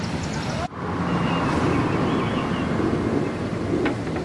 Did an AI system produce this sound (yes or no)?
no